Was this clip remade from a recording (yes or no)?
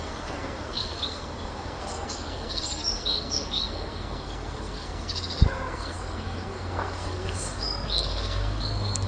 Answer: yes